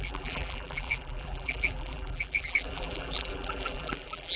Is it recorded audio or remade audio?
remade